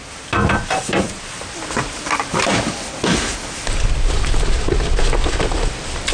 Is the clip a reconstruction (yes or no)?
yes